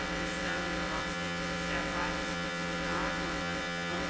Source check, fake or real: fake